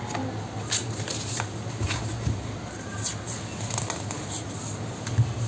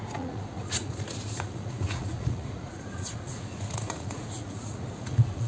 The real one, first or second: first